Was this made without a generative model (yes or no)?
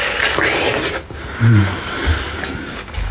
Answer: yes